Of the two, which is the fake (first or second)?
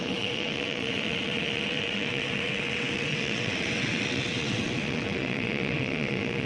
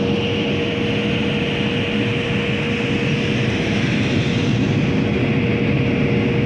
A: first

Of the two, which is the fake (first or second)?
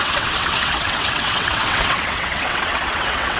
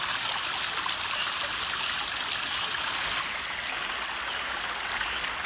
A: first